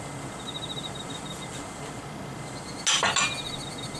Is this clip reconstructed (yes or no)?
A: no